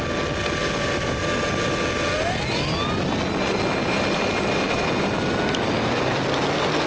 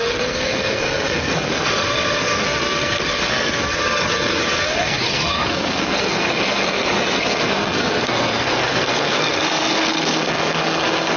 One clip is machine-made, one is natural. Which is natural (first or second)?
first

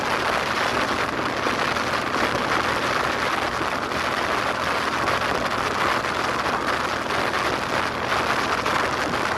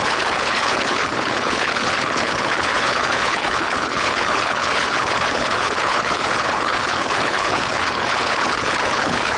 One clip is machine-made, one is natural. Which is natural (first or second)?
first